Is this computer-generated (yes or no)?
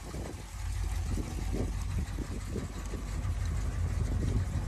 no